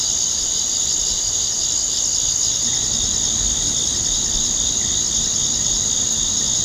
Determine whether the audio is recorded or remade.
recorded